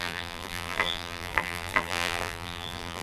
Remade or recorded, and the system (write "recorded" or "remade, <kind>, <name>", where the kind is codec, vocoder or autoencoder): remade, vocoder, BigVGAN v2